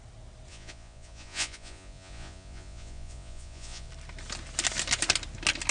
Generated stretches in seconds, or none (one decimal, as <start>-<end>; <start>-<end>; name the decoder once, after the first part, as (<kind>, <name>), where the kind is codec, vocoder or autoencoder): 0.5-3.9 (vocoder, Vocos)

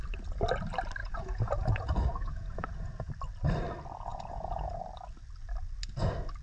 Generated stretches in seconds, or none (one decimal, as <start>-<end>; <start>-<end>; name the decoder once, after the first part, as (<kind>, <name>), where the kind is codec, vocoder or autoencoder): 1.0-3.1 (vocoder, Vocos); 4.1-4.8

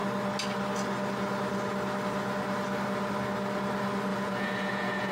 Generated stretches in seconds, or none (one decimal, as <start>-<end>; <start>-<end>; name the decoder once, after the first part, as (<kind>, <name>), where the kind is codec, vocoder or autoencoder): 4.1-5.1 (vocoder, Vocos)

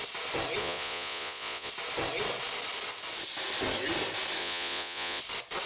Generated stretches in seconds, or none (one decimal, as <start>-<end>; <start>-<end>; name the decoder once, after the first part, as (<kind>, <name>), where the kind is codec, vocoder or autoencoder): 0.6-1.7 (vocoder, Vocos); 4.4-5.2

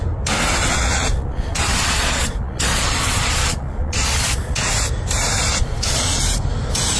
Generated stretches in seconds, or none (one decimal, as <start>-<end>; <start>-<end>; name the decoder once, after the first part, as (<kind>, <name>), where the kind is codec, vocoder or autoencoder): 0.5-4.7 (vocoder, Vocos); 5.5-6.2

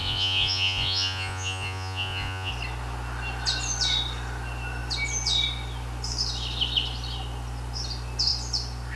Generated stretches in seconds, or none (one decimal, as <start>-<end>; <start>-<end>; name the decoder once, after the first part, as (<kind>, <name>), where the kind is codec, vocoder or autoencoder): 0.0-2.5 (vocoder, Vocos)

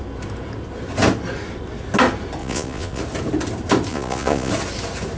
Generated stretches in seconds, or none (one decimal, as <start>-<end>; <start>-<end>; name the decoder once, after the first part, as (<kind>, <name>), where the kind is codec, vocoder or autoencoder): 2.4-3.0 (vocoder, Vocos); 3.9-4.5